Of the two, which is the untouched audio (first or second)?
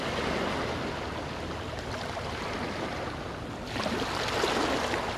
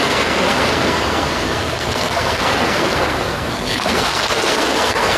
first